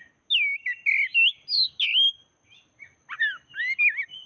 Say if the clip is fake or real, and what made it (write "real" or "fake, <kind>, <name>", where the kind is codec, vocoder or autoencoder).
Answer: real